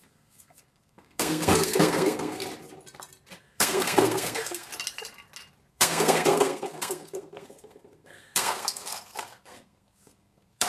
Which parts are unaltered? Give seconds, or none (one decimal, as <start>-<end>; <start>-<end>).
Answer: 2.4-3.4; 4.7-5.7